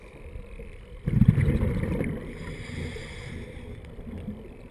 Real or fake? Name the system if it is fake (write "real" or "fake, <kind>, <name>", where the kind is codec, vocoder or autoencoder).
real